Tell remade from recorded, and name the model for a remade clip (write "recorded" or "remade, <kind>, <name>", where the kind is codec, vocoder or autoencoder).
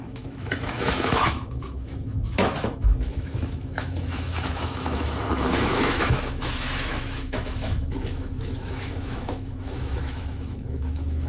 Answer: remade, autoencoder, DAC-VAE